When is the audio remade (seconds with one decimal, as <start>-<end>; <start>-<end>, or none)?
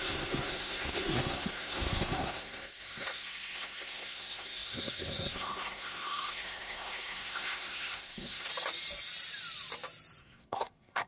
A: 0.0-8.5; 10.2-11.1